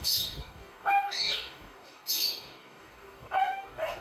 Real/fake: fake